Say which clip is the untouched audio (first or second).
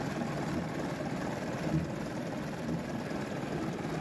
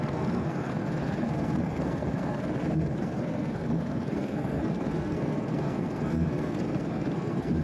first